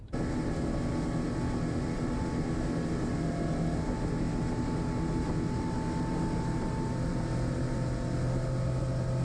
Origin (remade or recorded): recorded